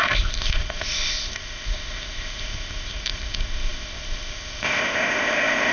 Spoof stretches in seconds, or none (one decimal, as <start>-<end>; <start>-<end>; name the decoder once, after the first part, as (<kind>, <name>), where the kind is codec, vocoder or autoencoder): 0.0-5.7 (codec, ZipCodec)